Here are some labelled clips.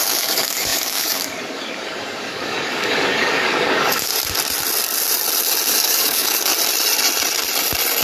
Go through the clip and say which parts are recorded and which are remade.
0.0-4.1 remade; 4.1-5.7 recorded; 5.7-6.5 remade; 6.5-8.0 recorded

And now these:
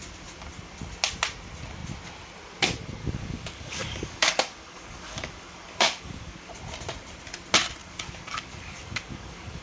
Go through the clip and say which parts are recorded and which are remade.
0.0-3.0 recorded; 3.0-6.5 remade; 6.5-7.8 recorded; 7.8-9.6 remade

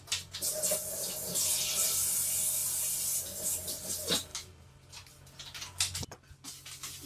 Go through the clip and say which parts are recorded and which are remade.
0.0-7.1 recorded